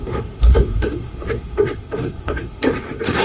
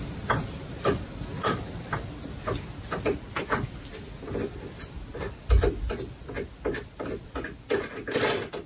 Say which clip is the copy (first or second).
first